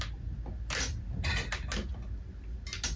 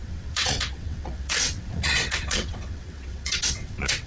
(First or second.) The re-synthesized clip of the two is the second